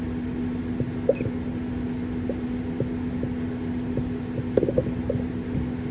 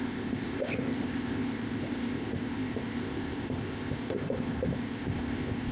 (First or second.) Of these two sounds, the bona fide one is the first